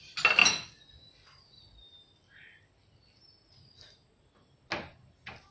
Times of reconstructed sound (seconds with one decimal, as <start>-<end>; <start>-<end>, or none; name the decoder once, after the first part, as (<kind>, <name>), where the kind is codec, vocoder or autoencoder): none